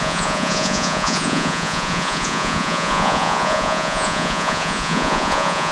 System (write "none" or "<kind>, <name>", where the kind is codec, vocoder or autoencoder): vocoder, Vocos